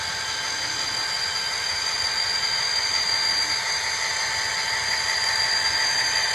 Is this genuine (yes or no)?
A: yes